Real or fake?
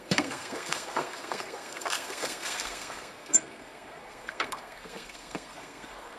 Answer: fake